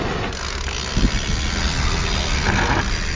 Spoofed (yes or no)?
no